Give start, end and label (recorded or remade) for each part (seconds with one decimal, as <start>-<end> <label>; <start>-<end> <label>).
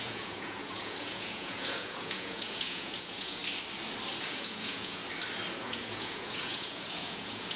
0.0-3.4 remade; 3.4-4.2 recorded; 4.2-5.0 remade; 5.0-5.5 recorded; 5.5-7.6 remade